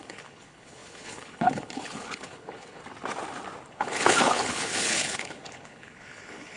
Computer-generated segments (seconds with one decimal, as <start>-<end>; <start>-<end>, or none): 0.0-2.8; 3.7-6.6

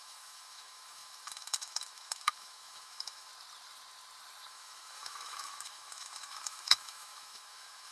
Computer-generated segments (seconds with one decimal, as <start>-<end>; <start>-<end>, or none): 0.0-3.3; 4.5-7.9

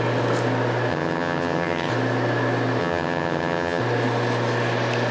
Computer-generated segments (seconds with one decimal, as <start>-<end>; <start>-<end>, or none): 0.9-1.9; 2.8-3.8

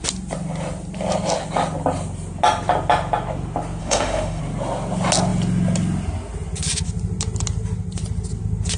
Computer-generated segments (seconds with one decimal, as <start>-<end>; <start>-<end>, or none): 3.8-4.4

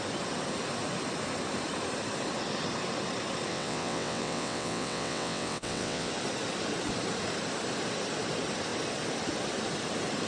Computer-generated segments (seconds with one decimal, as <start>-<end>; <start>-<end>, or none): 3.5-6.1

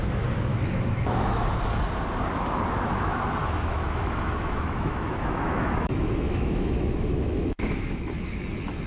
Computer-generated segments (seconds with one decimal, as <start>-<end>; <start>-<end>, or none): 0.5-1.6; 3.4-8.4